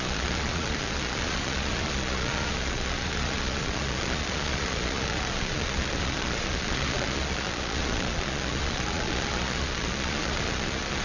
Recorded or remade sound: remade